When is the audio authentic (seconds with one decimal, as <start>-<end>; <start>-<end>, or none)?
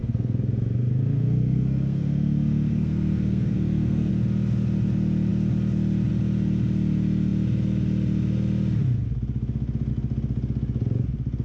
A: 4.1-11.4